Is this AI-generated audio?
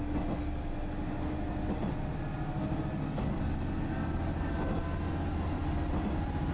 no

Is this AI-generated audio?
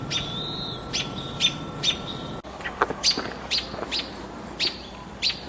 no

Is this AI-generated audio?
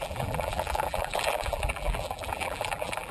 yes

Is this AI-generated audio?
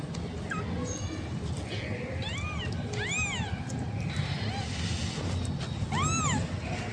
no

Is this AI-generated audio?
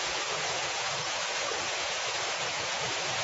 yes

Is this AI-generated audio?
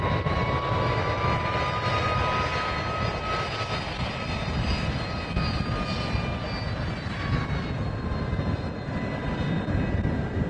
no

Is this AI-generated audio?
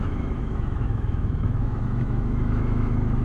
yes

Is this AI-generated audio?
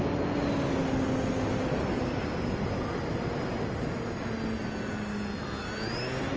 no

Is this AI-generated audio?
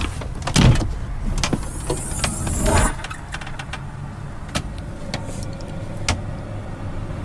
no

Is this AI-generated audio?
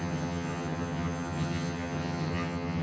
yes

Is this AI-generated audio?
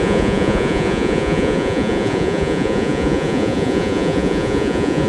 yes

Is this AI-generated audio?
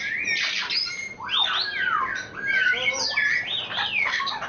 no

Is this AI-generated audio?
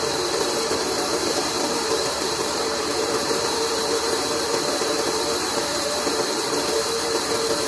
yes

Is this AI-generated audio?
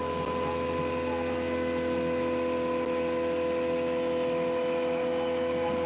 no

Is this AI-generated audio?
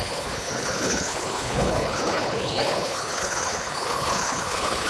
yes